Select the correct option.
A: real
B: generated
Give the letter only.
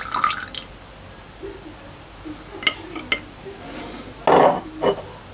A